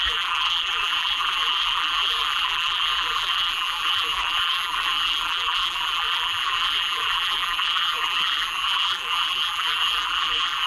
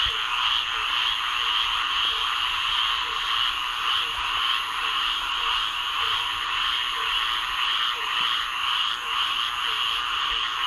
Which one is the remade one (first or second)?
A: first